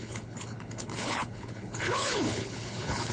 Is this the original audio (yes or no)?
no